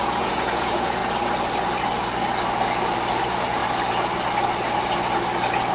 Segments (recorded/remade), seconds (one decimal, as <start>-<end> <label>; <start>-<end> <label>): 0.0-1.0 remade; 1.0-3.2 recorded; 3.2-3.6 remade; 3.6-5.7 recorded